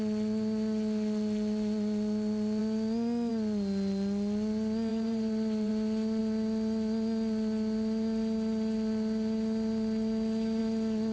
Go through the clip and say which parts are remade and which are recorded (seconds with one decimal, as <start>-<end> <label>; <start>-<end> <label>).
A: 0.0-4.9 recorded; 4.9-5.7 remade; 5.7-11.1 recorded